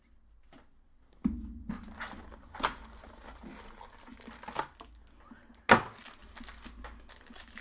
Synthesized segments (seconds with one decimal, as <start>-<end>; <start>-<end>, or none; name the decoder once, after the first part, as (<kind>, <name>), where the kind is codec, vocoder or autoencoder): none